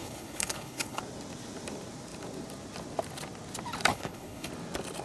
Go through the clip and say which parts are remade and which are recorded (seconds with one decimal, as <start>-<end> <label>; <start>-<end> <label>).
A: 0.0-1.0 remade; 1.0-3.9 recorded; 3.9-4.5 remade; 4.5-5.0 recorded